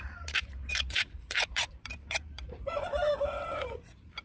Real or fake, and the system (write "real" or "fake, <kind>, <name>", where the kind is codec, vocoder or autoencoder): fake, vocoder, BigVGAN v2